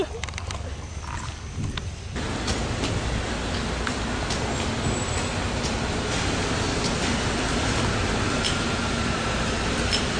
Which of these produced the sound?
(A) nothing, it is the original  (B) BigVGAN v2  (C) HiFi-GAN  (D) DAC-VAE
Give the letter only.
A